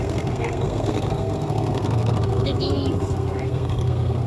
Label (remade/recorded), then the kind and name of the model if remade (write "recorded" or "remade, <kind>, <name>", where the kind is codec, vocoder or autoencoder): remade, codec, SNAC